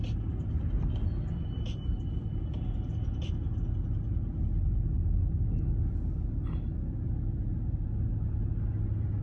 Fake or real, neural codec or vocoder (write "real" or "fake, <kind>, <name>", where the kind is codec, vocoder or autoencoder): real